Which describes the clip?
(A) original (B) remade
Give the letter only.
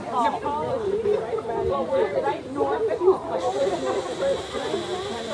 B